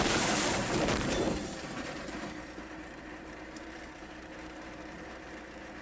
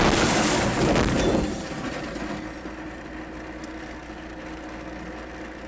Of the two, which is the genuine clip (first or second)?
second